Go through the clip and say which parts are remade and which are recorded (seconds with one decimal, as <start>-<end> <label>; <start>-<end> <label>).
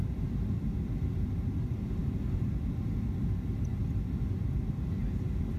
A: 0.0-5.6 recorded